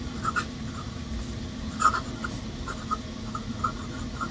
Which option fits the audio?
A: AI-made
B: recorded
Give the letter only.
B